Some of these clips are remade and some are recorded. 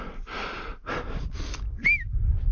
remade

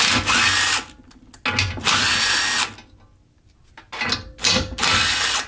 recorded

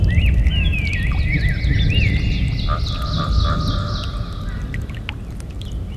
recorded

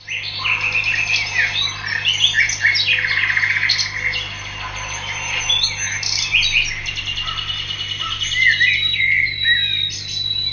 recorded